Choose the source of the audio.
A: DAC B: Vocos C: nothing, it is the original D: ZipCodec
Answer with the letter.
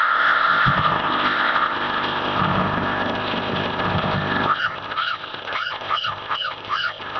D